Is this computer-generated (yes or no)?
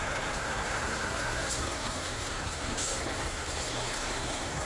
yes